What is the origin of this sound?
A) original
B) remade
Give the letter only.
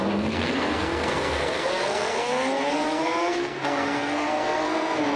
B